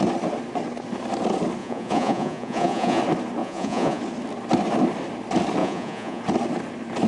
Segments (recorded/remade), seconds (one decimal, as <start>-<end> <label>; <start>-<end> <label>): 0.0-1.6 recorded; 1.6-3.0 remade; 3.0-3.4 recorded; 3.4-4.0 remade; 4.0-5.6 recorded; 5.6-6.2 remade; 6.2-7.1 recorded